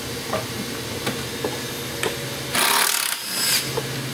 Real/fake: real